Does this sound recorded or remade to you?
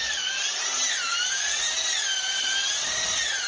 recorded